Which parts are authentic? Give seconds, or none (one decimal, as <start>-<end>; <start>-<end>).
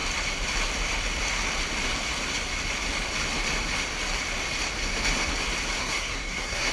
0.0-5.8